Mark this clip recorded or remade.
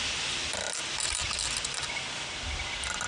recorded